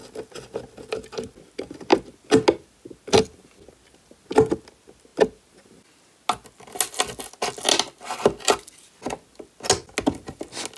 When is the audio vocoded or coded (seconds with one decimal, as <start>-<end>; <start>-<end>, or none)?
none